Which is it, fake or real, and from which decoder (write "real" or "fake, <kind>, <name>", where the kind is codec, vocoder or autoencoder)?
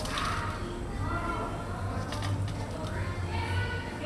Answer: real